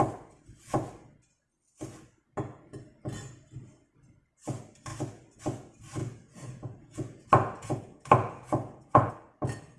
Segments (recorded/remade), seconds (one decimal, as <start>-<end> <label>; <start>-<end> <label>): 0.0-6.0 recorded; 6.0-9.1 remade; 9.1-9.8 recorded